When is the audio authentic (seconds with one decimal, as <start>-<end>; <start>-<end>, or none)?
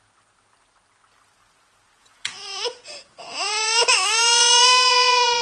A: 0.0-2.0